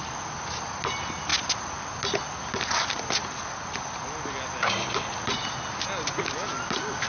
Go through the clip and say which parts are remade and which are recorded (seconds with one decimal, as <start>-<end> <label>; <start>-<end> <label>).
0.0-7.1 recorded